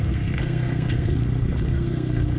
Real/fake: fake